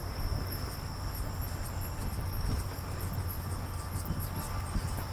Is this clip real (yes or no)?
yes